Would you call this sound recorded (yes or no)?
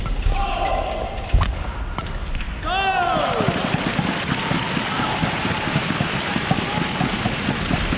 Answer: yes